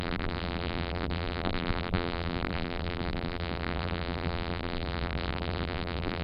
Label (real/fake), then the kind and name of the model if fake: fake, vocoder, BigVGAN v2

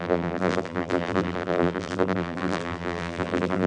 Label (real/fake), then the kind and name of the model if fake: fake, vocoder, BigVGAN v2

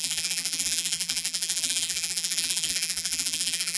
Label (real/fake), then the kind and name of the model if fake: fake, vocoder, BigVGAN v2